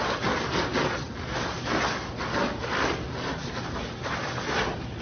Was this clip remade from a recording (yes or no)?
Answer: no